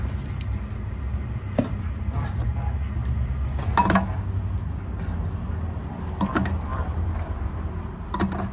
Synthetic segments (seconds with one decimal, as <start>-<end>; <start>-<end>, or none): 6.7-7.6

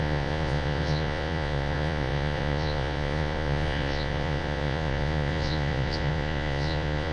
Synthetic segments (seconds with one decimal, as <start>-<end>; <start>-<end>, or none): 0.0-7.1